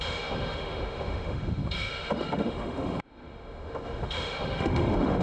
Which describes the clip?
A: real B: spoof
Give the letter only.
B